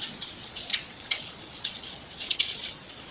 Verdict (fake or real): fake